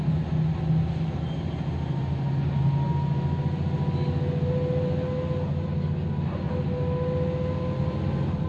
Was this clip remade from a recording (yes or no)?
no